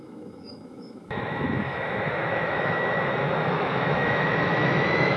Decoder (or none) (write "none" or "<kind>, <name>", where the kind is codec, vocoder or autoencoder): autoencoder, DAC-VAE